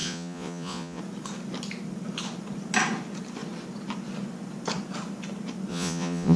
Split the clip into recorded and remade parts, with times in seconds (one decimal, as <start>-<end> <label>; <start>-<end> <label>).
0.0-1.0 remade; 1.0-5.7 recorded; 5.7-6.4 remade